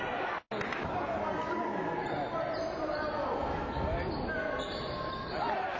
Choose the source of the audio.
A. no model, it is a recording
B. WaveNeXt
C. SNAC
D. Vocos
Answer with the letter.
A